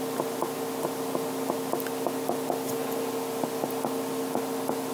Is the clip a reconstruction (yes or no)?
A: no